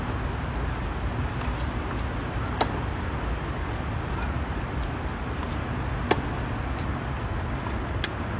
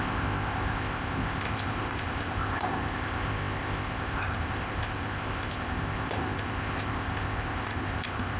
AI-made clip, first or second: second